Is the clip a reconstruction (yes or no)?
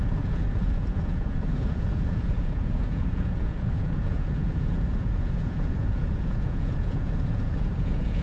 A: yes